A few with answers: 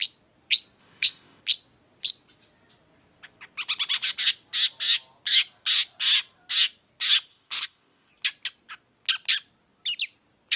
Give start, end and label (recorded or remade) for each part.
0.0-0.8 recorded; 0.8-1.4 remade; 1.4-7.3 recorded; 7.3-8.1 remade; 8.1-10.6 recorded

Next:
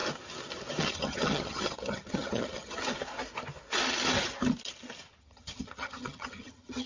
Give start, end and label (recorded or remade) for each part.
0.0-0.8 recorded; 0.8-2.8 remade; 2.8-5.2 recorded; 5.2-6.9 remade

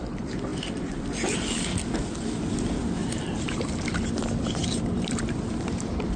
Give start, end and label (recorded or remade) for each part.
0.0-3.0 recorded; 3.0-4.1 remade; 4.1-4.6 recorded; 4.6-5.2 remade; 5.2-6.2 recorded

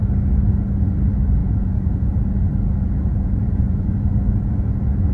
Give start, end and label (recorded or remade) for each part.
0.0-1.4 recorded; 1.4-4.1 remade; 4.1-5.1 recorded

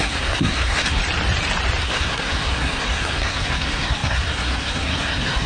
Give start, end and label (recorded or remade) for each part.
0.0-1.0 remade; 1.0-1.8 recorded; 1.8-5.5 remade

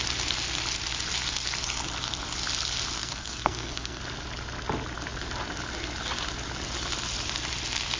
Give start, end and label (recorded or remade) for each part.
0.0-3.0 recorded; 3.0-4.0 remade; 4.0-8.0 recorded